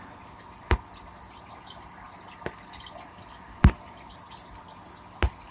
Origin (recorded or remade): recorded